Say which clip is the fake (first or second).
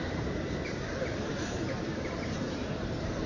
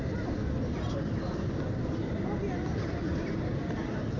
first